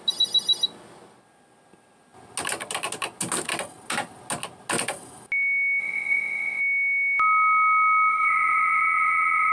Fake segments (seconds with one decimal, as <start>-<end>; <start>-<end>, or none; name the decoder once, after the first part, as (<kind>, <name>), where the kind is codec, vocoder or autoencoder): 5.8-6.6 (vocoder, WaveNeXt); 8.1-9.5